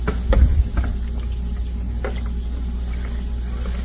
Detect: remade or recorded recorded